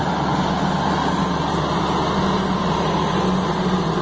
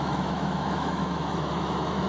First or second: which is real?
first